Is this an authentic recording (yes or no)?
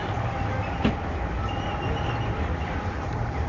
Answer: yes